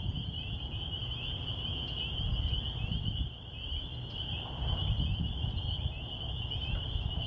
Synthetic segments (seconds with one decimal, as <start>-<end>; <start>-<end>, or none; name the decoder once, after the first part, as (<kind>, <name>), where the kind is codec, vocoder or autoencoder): none